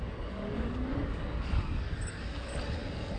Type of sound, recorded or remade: remade